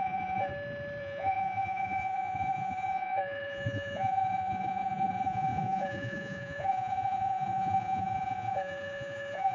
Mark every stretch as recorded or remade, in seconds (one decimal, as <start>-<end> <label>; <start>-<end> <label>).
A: 0.0-0.5 remade; 0.5-1.0 recorded; 1.0-9.5 remade